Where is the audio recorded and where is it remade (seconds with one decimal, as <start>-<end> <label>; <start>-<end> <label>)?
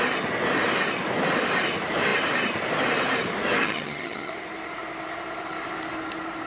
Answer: 0.0-3.6 recorded; 3.6-4.3 remade; 4.3-6.5 recorded